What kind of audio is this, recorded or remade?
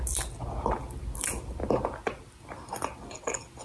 recorded